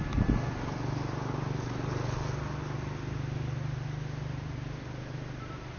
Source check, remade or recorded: recorded